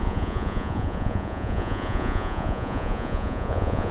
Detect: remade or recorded remade